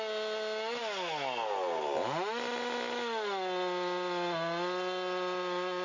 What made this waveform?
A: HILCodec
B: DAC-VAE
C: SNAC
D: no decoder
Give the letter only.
D